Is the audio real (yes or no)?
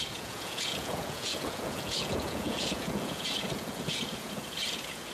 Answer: no